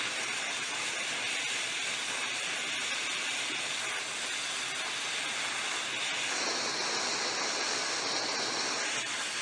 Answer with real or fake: real